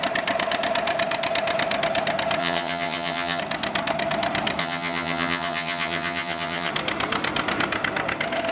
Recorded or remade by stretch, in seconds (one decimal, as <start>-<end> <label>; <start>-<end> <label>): 0.0-2.4 recorded; 2.4-3.4 remade; 3.4-4.6 recorded; 4.6-6.7 remade; 6.7-8.5 recorded